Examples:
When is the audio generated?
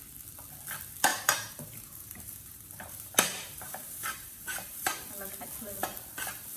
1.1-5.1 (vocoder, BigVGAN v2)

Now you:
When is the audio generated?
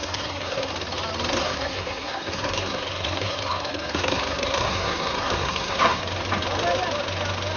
0.0-0.7 (codec, SNAC); 1.4-6.0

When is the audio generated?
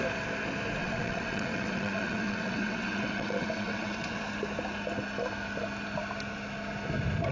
0.8-4.2 (vocoder, WaveNeXt)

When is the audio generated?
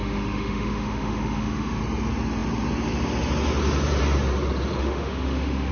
0.0-1.8 (autoencoder, DAC-VAE); 4.8-5.7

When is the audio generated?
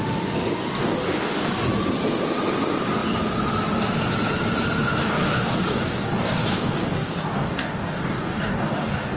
0.8-1.5 (codec, DAC); 5.0-9.2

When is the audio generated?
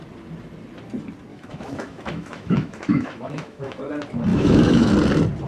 1.3-3.8 (autoencoder, DAC-VAE); 4.3-4.9